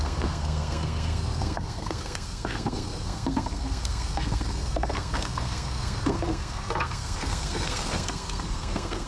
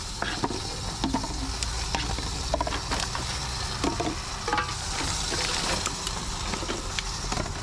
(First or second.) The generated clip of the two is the first